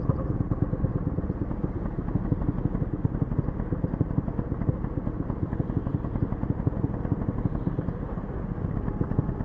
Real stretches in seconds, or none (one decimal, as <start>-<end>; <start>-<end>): 0.0-9.4